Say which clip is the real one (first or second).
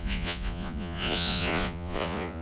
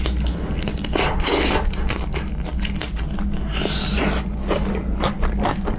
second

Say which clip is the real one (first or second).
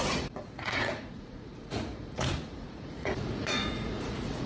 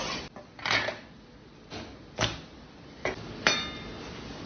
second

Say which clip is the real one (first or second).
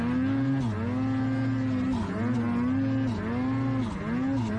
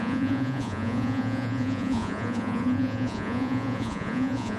first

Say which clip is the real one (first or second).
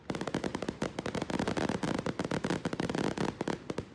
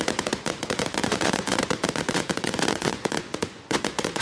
first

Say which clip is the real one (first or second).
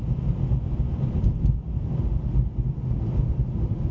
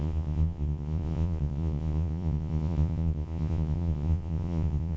first